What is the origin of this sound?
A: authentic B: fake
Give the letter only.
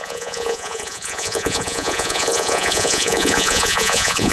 B